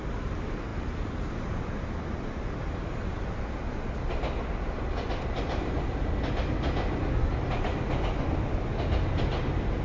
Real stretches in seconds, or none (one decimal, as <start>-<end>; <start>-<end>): 0.0-9.8